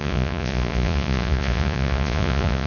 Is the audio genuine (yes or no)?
no